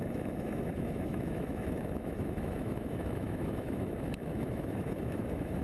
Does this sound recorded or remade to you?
remade